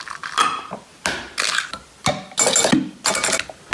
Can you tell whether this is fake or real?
real